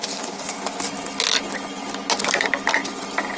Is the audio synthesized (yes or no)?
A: no